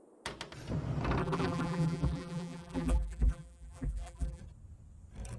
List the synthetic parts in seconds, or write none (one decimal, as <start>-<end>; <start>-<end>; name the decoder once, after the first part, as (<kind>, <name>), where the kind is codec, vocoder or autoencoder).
1.2-4.4 (vocoder, BigVGAN v2)